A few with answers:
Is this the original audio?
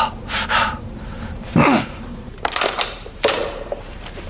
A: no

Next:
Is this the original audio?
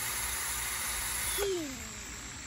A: no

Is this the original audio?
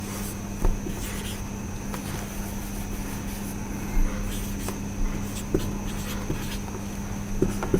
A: yes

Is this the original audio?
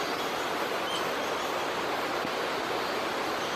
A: yes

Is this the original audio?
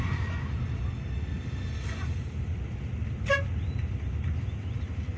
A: yes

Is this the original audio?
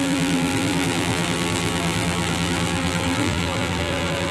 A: no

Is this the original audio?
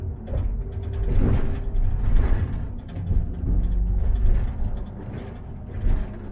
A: yes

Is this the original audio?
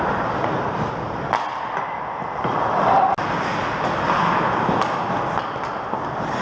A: yes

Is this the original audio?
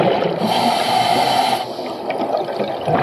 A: no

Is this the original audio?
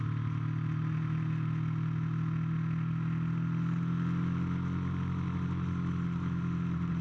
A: yes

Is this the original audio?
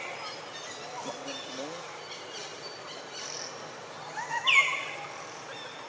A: yes